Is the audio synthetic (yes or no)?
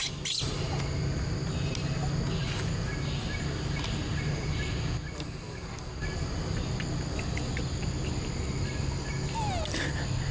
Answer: no